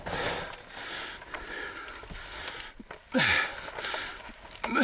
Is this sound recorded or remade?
recorded